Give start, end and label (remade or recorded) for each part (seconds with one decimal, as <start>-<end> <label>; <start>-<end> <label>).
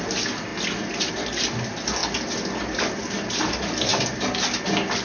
0.0-5.0 recorded